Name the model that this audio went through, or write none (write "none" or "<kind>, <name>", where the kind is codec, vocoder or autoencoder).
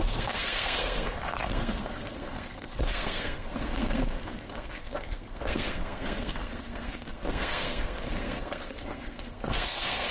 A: codec, SNAC